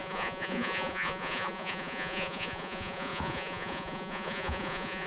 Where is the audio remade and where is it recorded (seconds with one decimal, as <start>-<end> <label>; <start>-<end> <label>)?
0.0-5.1 remade